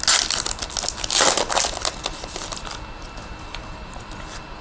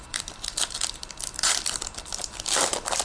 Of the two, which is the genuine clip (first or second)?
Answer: first